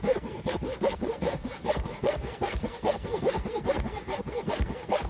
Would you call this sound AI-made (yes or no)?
yes